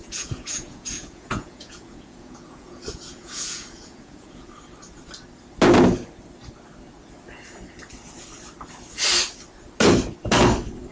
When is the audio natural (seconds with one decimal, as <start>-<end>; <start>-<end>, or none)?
4.5-10.9